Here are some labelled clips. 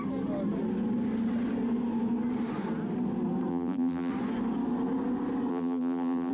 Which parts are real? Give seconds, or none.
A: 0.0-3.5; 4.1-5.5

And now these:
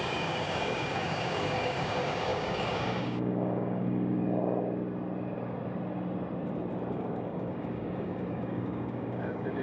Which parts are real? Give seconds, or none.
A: 4.2-6.9